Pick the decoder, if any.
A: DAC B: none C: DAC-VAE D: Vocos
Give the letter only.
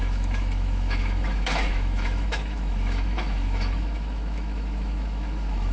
C